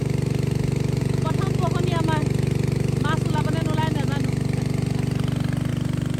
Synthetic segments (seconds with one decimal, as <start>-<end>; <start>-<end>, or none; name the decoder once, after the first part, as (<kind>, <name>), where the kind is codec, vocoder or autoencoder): 1.0-1.5 (vocoder, Vocos)